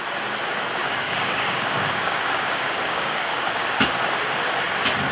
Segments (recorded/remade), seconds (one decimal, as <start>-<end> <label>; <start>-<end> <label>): 0.0-0.8 recorded; 0.8-3.9 remade; 3.9-5.1 recorded